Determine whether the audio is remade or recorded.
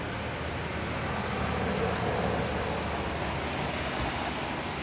recorded